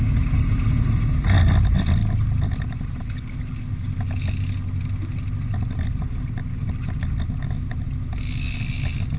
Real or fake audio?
real